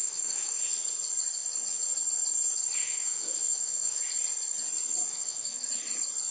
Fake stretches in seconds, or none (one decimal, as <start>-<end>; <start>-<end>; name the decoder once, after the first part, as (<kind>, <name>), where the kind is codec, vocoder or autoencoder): 0.0-0.6 (autoencoder, DAC-VAE); 2.8-4.0; 5.1-5.7